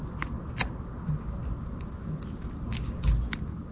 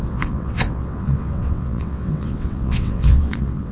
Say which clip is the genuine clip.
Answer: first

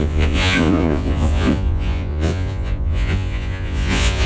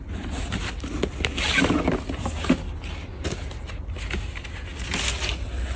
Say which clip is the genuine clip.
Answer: second